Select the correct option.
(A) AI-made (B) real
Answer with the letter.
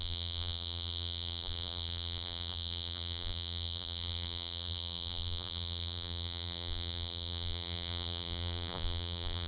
A